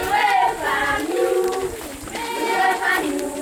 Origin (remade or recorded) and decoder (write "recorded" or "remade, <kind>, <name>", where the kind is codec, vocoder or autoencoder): recorded